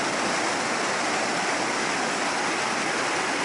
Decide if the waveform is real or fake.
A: real